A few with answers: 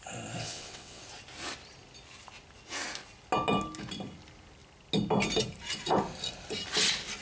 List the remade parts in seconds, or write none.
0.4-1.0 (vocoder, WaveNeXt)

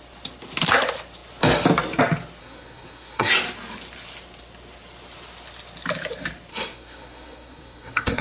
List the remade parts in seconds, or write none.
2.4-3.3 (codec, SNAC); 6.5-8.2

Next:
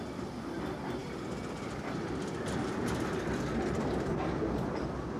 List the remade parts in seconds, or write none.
1.0-4.1 (vocoder, BigVGAN v2)

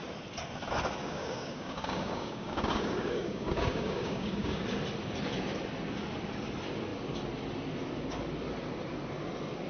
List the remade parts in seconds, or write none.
1.0-4.6 (codec, DAC)

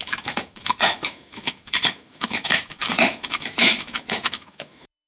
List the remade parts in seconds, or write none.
0.0-5.1 (autoencoder, DAC-VAE)